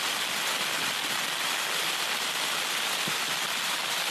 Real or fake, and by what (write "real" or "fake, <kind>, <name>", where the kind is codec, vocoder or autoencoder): real